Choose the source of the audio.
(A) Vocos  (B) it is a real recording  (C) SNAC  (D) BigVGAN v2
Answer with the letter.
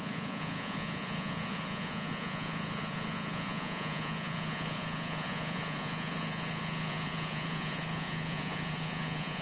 A